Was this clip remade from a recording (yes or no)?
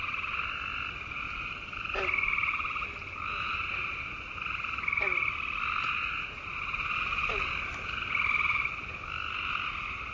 no